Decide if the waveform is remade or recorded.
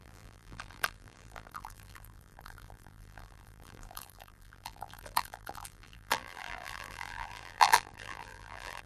remade